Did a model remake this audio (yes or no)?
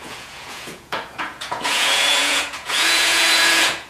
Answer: yes